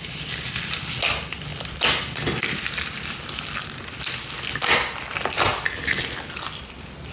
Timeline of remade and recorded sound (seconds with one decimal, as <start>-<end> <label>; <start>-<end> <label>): 0.0-7.1 recorded